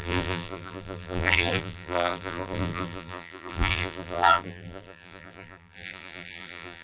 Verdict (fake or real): fake